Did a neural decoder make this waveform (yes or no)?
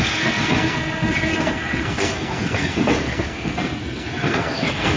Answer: yes